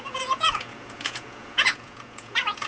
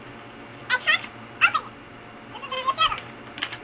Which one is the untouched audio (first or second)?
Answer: second